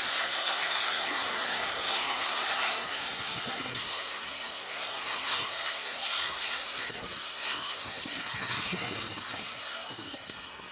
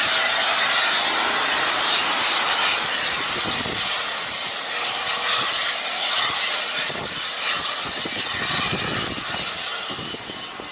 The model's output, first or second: first